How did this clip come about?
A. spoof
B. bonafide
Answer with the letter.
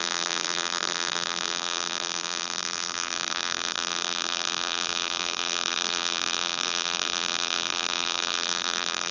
A